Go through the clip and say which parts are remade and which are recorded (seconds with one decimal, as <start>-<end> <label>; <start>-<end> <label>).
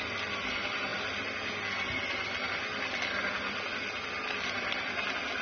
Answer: 0.0-5.4 recorded